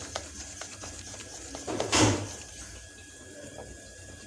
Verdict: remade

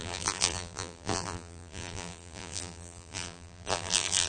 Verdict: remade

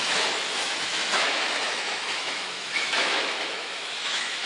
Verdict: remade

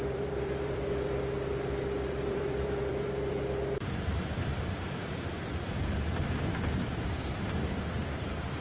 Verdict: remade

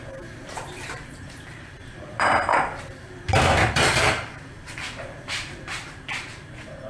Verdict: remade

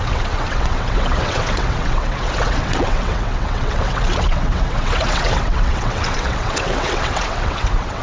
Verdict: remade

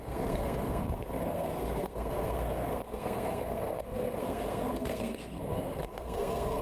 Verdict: remade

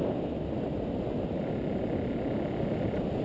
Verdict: recorded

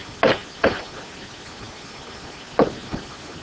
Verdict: recorded